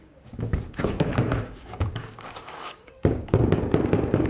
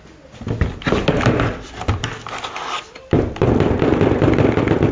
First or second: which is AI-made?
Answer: first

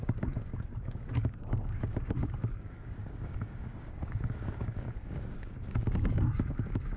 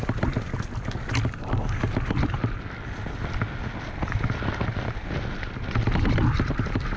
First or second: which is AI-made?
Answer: first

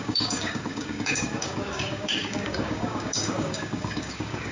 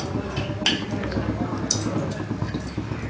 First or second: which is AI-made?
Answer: first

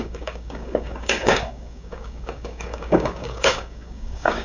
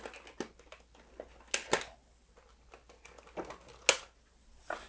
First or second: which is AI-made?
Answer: first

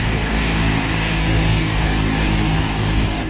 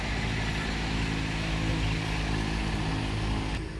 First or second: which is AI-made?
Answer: first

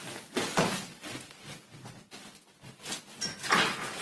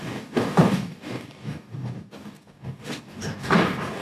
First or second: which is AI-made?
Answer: second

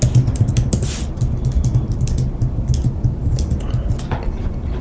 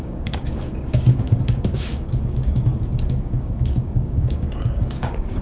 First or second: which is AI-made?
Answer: second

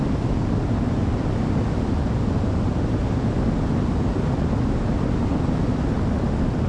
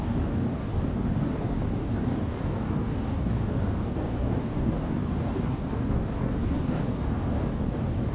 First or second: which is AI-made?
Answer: second